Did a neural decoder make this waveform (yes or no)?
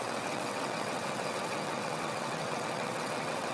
yes